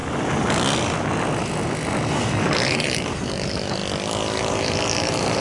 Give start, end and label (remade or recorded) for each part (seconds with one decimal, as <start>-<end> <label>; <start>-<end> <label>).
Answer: 0.0-2.1 recorded; 2.1-3.8 remade; 3.8-4.4 recorded; 4.4-5.4 remade